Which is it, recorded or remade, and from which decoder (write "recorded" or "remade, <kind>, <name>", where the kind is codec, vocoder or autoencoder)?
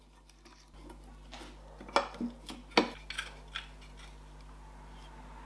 recorded